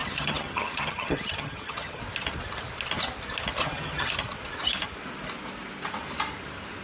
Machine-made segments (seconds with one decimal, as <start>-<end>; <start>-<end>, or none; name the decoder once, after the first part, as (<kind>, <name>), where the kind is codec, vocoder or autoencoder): 0.0-2.0 (vocoder, HiFi-GAN); 3.6-4.1